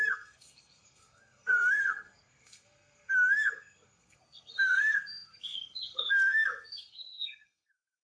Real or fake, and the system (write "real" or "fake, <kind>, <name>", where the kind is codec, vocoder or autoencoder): fake, codec, SNAC